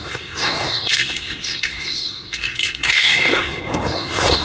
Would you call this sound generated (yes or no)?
yes